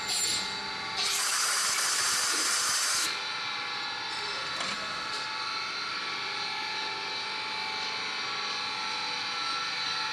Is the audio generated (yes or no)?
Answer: no